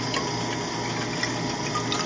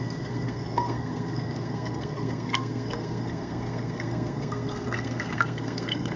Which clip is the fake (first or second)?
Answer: second